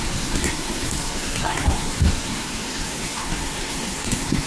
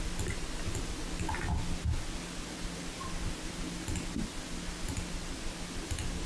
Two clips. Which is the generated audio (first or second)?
first